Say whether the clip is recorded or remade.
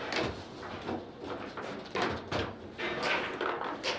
recorded